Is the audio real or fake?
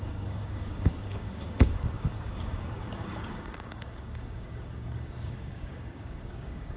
fake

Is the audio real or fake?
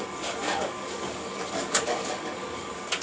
fake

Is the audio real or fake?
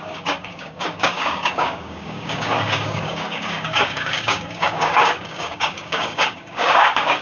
fake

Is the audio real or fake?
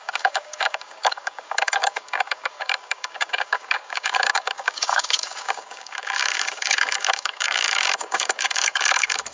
fake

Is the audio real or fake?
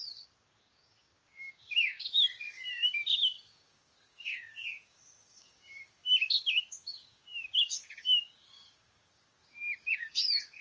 fake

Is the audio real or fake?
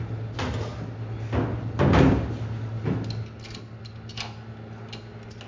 real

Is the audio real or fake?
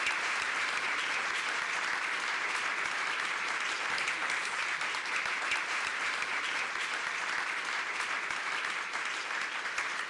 real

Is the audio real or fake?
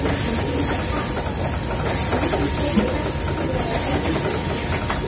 real